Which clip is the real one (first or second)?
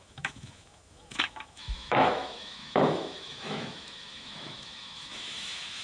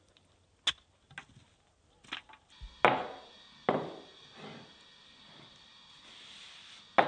second